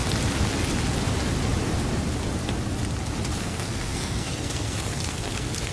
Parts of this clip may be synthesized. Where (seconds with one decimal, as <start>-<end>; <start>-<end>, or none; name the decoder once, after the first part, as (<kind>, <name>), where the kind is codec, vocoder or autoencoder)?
3.4-5.7 (codec, SNAC)